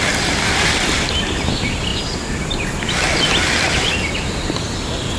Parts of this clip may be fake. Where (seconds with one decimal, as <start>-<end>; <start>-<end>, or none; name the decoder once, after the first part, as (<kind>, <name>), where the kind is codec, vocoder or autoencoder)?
none